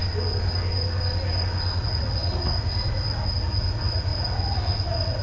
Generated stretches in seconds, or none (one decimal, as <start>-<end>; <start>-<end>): 1.8-5.2